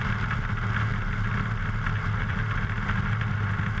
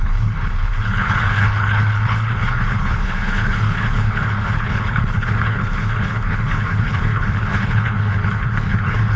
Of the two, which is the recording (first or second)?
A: first